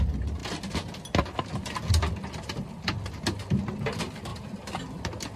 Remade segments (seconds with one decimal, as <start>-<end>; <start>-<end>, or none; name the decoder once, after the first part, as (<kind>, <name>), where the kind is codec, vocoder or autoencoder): none